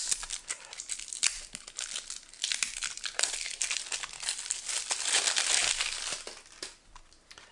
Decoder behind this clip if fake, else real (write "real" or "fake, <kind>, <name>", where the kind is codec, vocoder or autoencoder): real